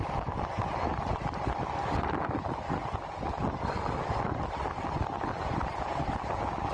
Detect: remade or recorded recorded